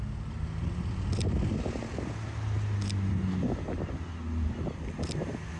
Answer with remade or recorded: recorded